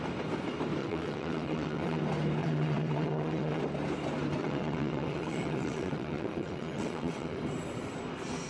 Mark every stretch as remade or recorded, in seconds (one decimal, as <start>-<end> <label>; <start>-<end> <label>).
0.0-0.8 recorded; 0.8-2.0 remade; 2.0-2.4 recorded; 2.4-3.6 remade; 3.6-4.4 recorded; 4.4-7.4 remade; 7.4-8.5 recorded